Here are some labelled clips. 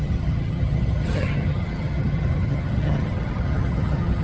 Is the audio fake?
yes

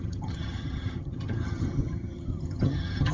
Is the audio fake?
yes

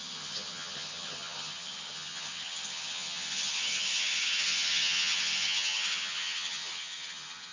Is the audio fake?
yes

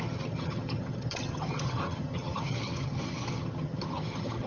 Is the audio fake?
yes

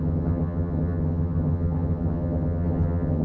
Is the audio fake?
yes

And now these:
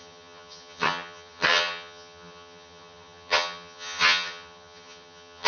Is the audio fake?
yes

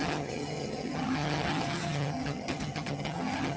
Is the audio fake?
yes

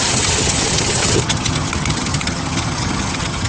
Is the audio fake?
yes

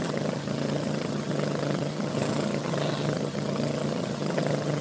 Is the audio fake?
yes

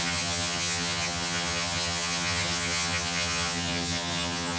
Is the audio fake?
yes